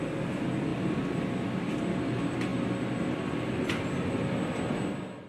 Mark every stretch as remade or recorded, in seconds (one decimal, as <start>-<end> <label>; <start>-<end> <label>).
0.0-5.3 recorded